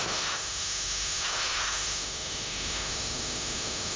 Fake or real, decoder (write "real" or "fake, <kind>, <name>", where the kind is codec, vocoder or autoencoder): fake, autoencoder, DAC-VAE